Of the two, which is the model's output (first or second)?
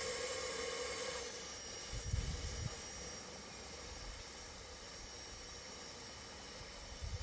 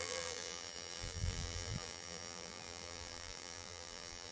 second